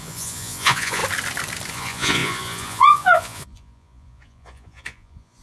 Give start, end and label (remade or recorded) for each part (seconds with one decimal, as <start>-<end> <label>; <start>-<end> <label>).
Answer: 0.0-1.0 remade; 1.0-1.7 recorded; 1.7-5.4 remade